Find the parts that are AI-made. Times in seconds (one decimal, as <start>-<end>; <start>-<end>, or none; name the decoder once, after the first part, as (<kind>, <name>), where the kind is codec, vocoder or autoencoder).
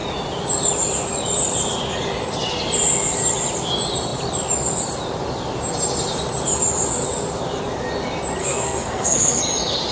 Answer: 8.4-9.4 (codec, SNAC)